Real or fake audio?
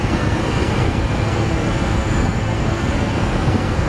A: fake